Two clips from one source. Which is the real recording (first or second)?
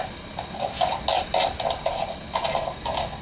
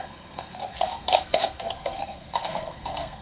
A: first